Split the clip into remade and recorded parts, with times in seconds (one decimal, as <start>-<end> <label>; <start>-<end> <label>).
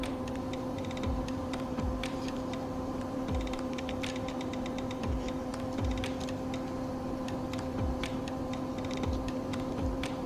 0.0-5.9 remade; 5.9-6.9 recorded; 6.9-10.3 remade